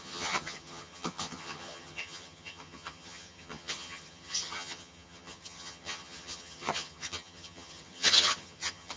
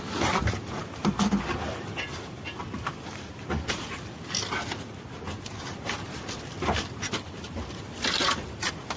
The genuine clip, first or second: second